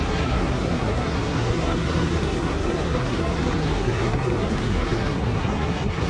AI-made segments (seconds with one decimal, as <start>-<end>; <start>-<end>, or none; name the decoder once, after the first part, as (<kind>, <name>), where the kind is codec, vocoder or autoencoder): 0.0-6.1 (codec, SNAC)